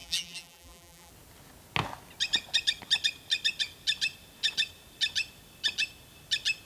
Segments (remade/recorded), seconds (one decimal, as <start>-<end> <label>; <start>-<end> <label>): 0.0-1.1 remade; 1.1-6.7 recorded